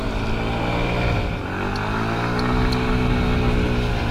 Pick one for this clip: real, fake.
real